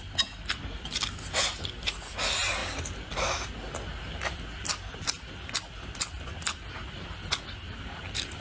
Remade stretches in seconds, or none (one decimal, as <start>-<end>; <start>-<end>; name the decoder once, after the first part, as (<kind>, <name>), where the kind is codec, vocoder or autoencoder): none